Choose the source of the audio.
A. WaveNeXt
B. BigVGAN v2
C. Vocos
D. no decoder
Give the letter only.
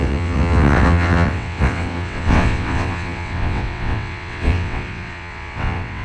A